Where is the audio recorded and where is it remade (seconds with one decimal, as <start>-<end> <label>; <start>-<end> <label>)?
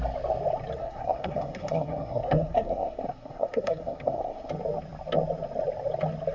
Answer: 0.0-0.8 recorded; 0.8-4.5 remade; 4.5-6.3 recorded